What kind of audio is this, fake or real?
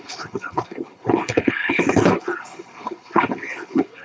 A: fake